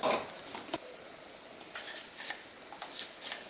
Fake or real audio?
real